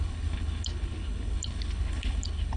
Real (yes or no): no